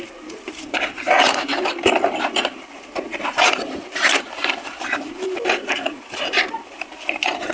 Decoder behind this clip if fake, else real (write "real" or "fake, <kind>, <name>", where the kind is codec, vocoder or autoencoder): fake, vocoder, BigVGAN v2